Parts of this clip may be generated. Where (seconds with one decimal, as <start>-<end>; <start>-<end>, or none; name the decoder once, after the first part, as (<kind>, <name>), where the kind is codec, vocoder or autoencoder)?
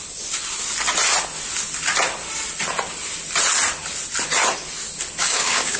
5.2-5.8 (codec, DAC)